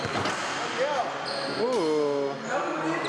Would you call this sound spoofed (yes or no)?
no